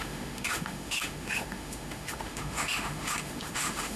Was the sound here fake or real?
fake